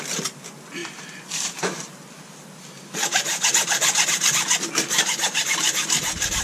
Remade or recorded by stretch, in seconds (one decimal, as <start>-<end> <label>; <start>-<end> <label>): 0.0-6.4 recorded